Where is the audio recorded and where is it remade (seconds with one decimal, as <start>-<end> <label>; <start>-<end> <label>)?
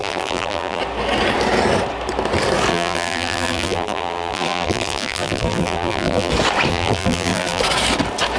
0.0-0.8 remade; 0.8-2.7 recorded; 2.7-6.3 remade; 6.3-6.7 recorded; 6.7-7.6 remade; 7.6-8.4 recorded